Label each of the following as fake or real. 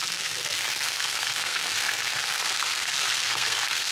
fake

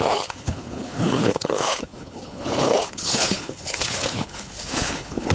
fake